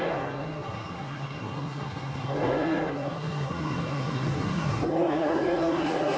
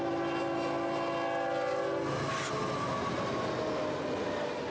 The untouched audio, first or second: second